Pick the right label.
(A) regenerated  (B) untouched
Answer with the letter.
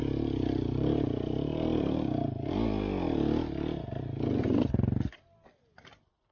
B